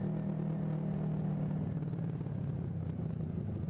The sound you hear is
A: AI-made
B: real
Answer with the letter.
B